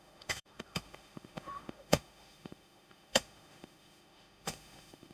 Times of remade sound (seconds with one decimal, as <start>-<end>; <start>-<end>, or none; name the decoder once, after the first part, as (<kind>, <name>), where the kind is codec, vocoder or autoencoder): 0.0-5.1 (autoencoder, DAC-VAE)